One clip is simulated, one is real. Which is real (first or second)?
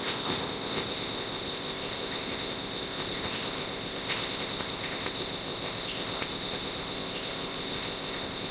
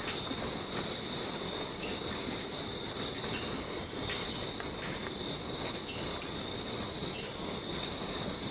second